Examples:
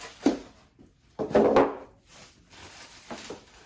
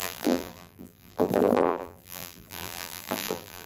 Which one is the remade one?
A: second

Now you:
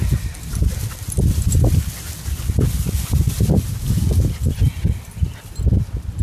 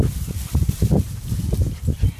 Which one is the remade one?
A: second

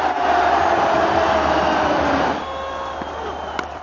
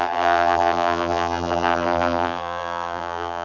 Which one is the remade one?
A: second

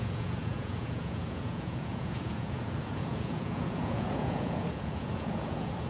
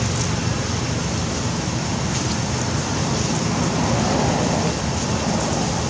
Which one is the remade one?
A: first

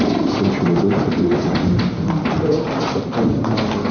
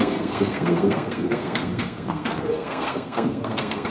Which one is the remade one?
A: second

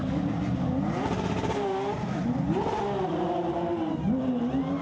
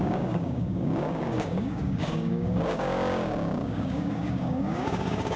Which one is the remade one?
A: second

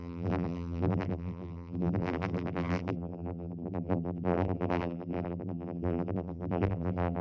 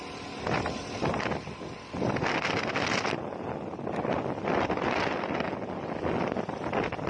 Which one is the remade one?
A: first